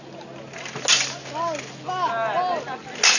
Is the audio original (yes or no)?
yes